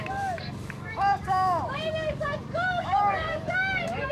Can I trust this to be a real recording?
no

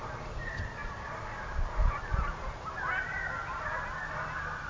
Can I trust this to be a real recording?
yes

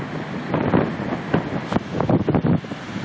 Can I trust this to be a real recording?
yes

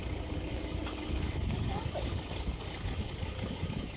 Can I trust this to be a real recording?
no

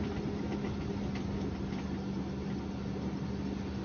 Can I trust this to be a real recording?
yes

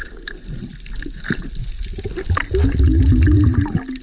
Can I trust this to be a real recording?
yes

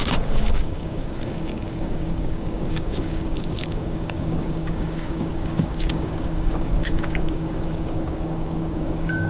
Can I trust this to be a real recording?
no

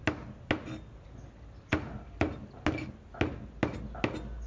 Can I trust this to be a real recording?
yes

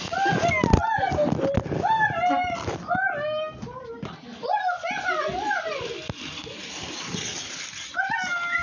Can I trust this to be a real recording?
yes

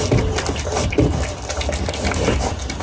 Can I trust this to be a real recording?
yes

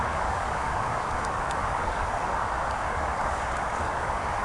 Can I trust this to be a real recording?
no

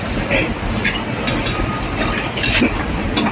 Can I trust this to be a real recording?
yes